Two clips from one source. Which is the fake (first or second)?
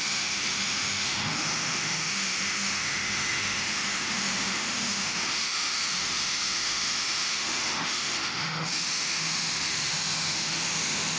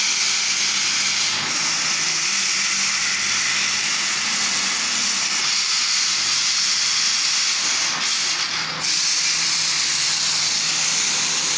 first